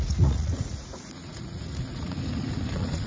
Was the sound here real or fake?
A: fake